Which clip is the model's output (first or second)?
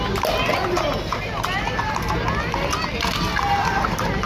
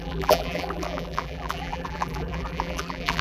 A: second